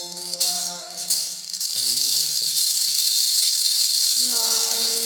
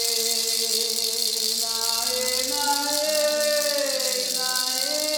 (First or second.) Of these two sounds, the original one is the second